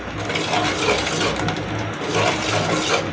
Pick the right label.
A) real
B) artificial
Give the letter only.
A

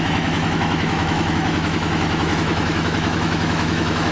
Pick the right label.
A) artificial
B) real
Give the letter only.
A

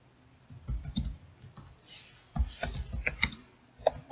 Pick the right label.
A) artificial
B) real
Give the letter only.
B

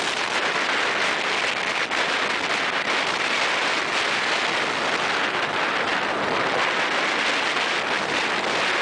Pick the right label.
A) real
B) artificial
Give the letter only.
A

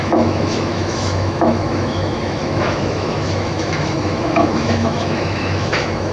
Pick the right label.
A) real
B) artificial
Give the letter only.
B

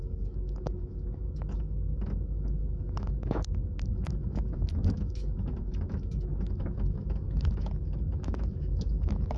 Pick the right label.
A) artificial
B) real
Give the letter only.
A